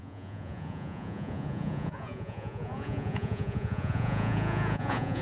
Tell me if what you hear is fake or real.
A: fake